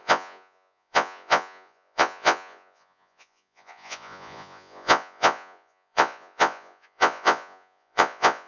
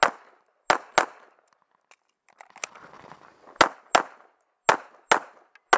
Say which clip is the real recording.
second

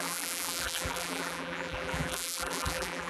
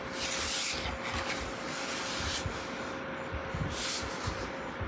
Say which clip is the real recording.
second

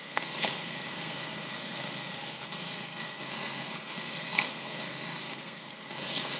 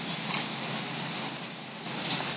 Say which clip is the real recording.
second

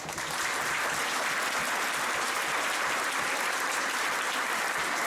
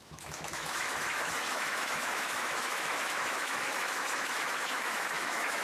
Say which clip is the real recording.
first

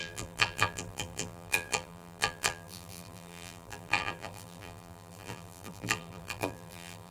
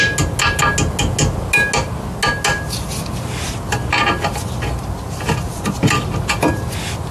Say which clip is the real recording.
second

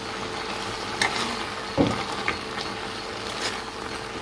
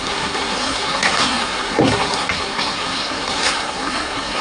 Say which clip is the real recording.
first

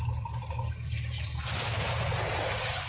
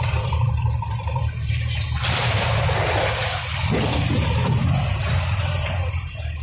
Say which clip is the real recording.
first